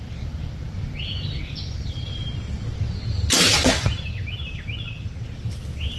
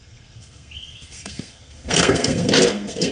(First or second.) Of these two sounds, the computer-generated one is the second